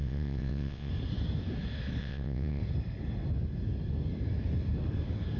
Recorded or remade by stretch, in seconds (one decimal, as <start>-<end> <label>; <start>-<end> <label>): 0.0-0.9 remade; 0.9-2.0 recorded; 2.0-2.6 remade; 2.6-5.4 recorded